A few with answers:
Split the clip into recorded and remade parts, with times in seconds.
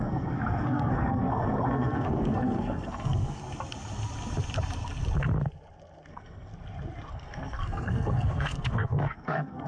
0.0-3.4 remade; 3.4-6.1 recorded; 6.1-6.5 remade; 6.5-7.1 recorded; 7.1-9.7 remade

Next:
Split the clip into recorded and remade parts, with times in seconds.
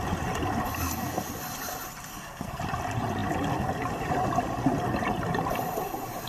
0.0-2.1 recorded; 2.1-2.6 remade; 2.6-6.3 recorded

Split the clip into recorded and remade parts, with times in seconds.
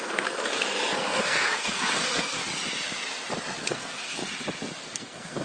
0.0-2.4 remade; 2.4-3.6 recorded; 3.6-4.2 remade; 4.2-4.8 recorded; 4.8-5.4 remade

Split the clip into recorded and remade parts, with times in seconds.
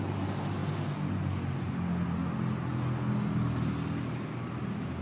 0.0-5.0 recorded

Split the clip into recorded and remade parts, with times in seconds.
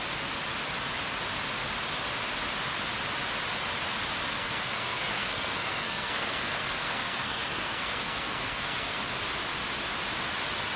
0.0-4.3 recorded; 4.3-9.0 remade; 9.0-10.8 recorded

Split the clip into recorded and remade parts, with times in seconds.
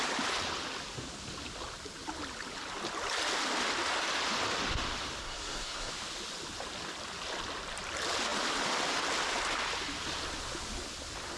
0.0-5.2 recorded; 5.2-5.9 remade; 5.9-11.4 recorded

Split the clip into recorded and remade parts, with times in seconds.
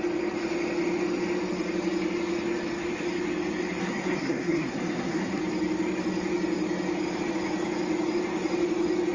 0.0-3.8 recorded; 3.8-5.4 remade; 5.4-9.1 recorded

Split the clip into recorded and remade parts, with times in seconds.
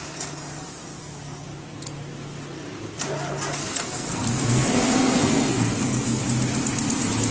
0.0-3.6 recorded; 3.6-6.2 remade; 6.2-7.3 recorded